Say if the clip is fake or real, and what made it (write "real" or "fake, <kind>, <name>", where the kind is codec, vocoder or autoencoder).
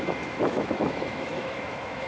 fake, autoencoder, DAC-VAE